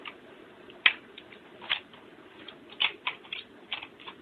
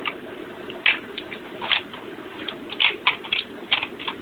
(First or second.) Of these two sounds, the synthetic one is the first